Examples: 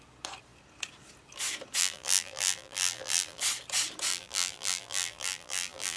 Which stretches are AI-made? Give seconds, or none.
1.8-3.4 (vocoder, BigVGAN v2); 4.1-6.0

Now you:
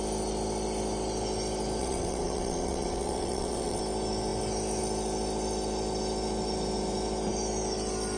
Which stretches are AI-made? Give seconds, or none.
1.8-3.8 (vocoder, WaveNeXt)

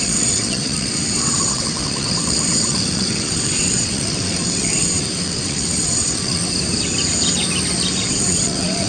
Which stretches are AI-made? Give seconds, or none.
0.0-6.4 (vocoder, WaveNeXt); 8.1-8.9

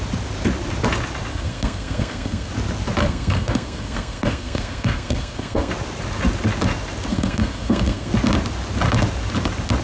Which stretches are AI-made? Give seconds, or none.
1.3-2.5 (codec, SNAC); 3.0-5.7; 7.1-8.1

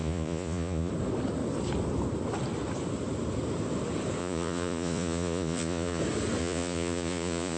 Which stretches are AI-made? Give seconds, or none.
0.0-0.9 (vocoder, Vocos); 4.2-6.0; 6.4-7.6

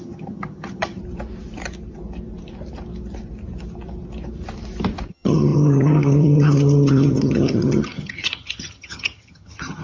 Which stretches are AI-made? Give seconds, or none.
0.0-1.0 (vocoder, HiFi-GAN); 5.1-9.8

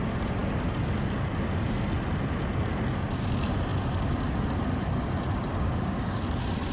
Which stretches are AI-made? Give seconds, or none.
5.5-6.2 (codec, DAC)

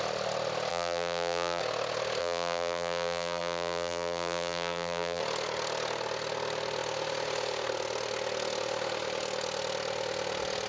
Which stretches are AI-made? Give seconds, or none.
0.7-1.6 (vocoder, BigVGAN v2); 2.2-5.2